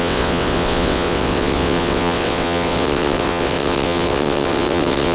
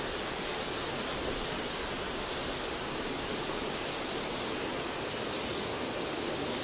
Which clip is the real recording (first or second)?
second